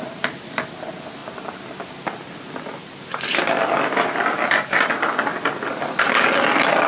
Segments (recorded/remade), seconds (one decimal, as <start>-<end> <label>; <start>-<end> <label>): 0.0-6.9 recorded